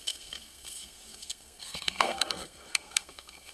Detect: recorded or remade remade